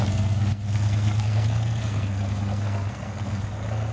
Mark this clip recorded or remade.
remade